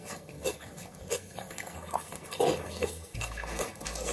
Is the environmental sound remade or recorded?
remade